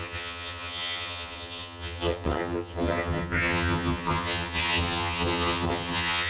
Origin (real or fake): fake